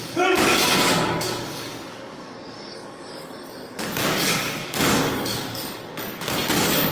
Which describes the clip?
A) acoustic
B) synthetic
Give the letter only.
B